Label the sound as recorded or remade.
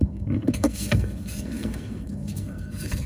remade